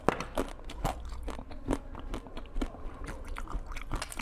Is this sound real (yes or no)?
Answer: yes